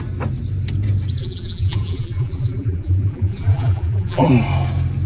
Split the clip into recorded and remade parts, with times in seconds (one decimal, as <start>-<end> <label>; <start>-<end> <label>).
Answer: 0.0-1.2 recorded; 1.2-4.3 remade; 4.3-5.1 recorded